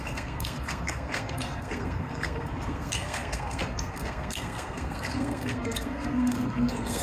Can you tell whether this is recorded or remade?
remade